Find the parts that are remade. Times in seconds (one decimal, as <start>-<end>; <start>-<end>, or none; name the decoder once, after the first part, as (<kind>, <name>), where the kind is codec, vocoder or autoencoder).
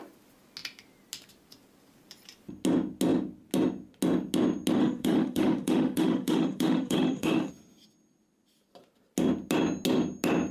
4.8-7.5 (autoencoder, DAC-VAE)